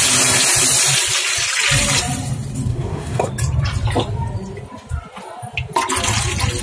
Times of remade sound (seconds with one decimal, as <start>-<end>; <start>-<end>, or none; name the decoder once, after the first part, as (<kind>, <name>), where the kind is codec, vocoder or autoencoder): 2.7-3.3 (codec, SNAC)